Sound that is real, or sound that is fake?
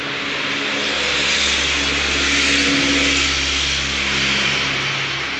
real